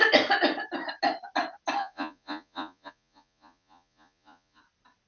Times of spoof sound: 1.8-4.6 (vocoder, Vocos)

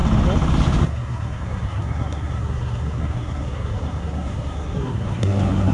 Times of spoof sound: 0.8-5.7 (codec, SNAC)

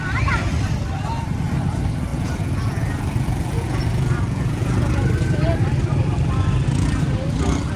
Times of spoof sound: 2.1-4.8 (vocoder, Vocos)

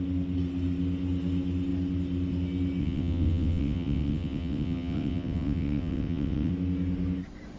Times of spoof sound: 2.8-6.5 (vocoder, WaveNeXt)

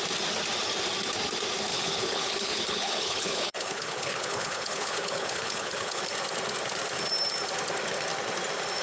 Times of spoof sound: 1.7-6.0 (codec, HILCodec)

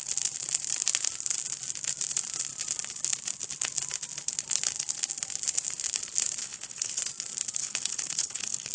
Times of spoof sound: 6.4-7.0 (codec, HILCodec); 7.6-8.7

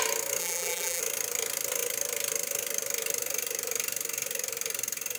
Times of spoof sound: 0.4-1.0 (vocoder, BigVGAN v2)

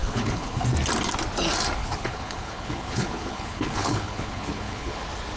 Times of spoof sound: 0.0-0.6 (codec, HILCodec); 1.8-5.0